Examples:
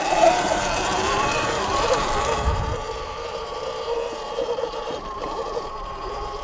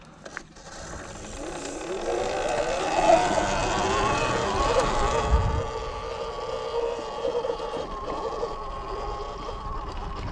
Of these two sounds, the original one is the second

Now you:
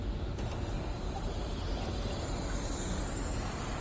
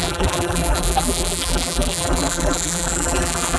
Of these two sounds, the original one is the first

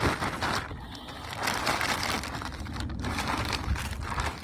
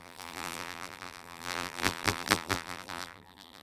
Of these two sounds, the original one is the first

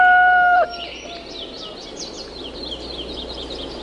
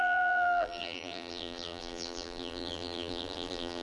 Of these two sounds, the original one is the first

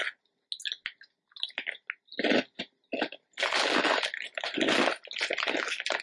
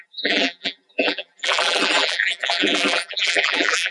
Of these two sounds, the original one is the first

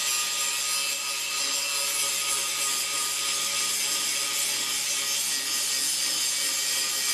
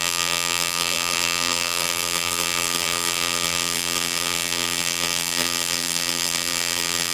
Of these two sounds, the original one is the first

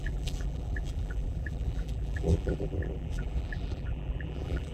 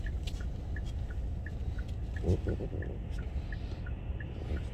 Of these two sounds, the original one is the second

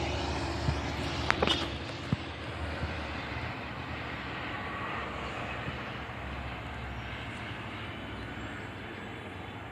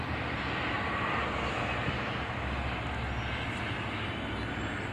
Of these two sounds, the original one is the second